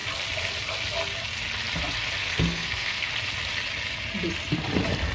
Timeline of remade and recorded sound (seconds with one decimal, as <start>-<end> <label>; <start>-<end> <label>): 0.0-2.2 recorded; 2.2-3.1 remade; 3.1-5.1 recorded

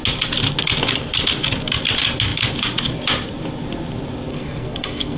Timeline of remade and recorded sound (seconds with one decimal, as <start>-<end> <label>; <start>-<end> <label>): 0.0-4.3 recorded; 4.3-5.2 remade

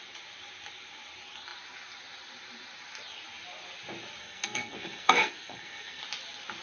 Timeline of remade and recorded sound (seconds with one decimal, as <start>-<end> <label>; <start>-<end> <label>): 0.0-4.2 recorded; 4.2-6.0 remade; 6.0-6.6 recorded